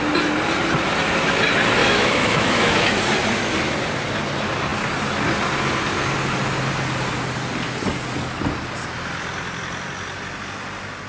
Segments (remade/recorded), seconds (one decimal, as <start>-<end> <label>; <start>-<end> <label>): 0.0-1.8 recorded; 1.8-3.0 remade; 3.0-11.1 recorded